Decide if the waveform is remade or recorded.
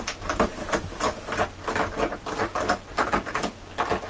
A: recorded